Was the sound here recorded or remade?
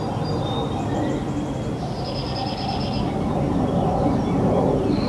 recorded